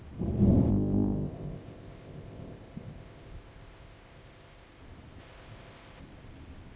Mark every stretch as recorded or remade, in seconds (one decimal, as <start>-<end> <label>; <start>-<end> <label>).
0.0-0.7 recorded; 0.7-4.8 remade; 4.8-5.2 recorded; 5.2-6.0 remade; 6.0-6.8 recorded